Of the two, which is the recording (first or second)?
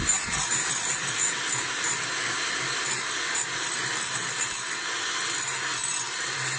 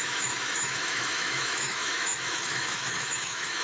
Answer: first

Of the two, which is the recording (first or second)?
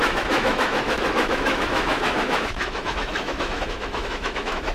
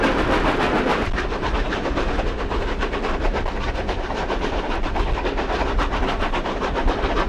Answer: second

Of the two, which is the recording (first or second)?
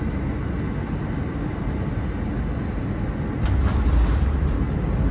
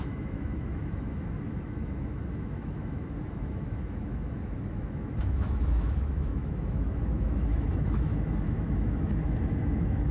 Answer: first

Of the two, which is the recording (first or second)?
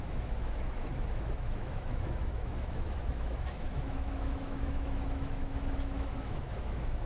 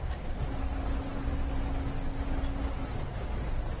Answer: second